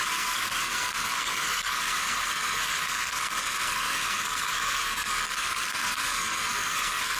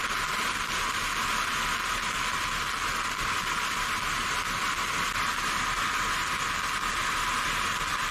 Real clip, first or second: second